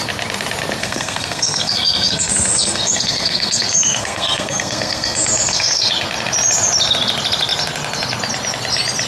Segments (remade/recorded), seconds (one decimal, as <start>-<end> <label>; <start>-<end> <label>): 0.0-0.8 recorded; 0.8-5.9 remade; 5.9-9.1 recorded